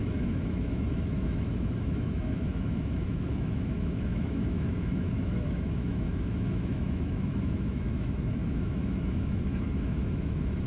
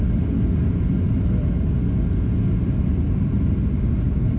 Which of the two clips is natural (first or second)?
second